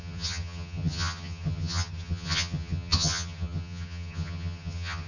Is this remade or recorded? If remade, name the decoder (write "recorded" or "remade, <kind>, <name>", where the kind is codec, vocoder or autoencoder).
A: remade, vocoder, HiFi-GAN